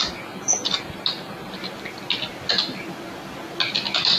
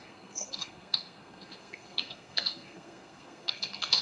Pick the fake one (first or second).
second